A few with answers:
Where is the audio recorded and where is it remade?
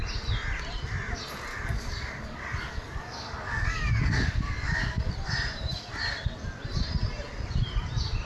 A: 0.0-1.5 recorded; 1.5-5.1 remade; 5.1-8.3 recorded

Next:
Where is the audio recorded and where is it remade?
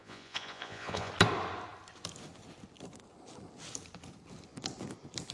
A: 0.0-1.1 remade; 1.1-5.3 recorded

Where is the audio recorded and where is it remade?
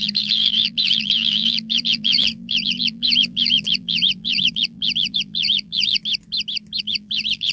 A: 0.0-6.0 remade; 6.0-6.8 recorded; 6.8-7.5 remade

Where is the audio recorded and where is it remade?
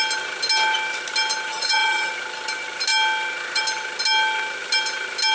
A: 0.0-1.5 recorded; 1.5-2.1 remade; 2.1-5.3 recorded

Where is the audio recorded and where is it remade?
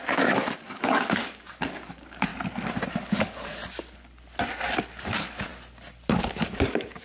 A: 0.0-2.3 remade; 2.3-2.9 recorded; 2.9-3.6 remade; 3.6-5.0 recorded; 5.0-5.5 remade; 5.5-6.1 recorded; 6.1-7.0 remade